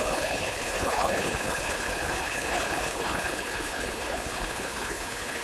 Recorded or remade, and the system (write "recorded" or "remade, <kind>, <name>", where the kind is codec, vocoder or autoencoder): remade, codec, HILCodec